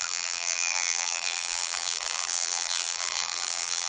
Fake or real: fake